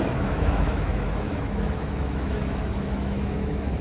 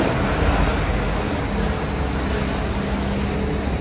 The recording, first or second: second